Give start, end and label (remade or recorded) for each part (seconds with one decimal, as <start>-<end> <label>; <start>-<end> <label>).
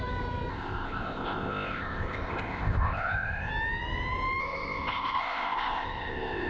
0.0-0.5 recorded; 0.5-3.5 remade; 3.5-4.4 recorded; 4.4-6.5 remade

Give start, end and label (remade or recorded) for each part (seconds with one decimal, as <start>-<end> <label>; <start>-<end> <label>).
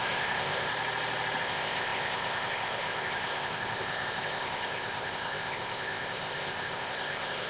0.0-0.7 remade; 0.7-1.4 recorded; 1.4-7.5 remade